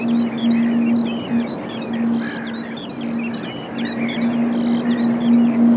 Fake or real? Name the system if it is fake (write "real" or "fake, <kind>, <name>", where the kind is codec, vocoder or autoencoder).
real